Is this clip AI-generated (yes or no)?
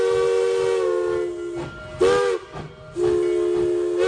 no